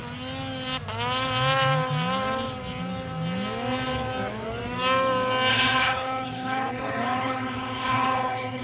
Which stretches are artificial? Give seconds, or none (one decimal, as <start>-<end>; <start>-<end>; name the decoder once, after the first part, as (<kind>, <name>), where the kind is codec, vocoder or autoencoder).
5.5-8.6 (codec, HILCodec)